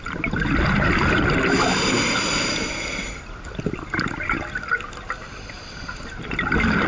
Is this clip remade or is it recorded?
recorded